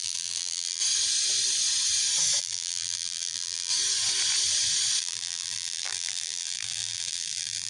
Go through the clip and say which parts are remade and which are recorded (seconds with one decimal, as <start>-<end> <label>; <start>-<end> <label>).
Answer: 0.0-0.8 remade; 0.8-2.4 recorded; 2.4-3.7 remade; 3.7-5.0 recorded; 5.0-7.7 remade